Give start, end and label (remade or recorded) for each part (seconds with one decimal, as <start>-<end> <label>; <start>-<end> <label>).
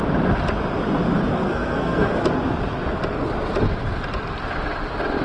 0.0-1.3 recorded; 1.3-2.2 remade; 2.2-5.2 recorded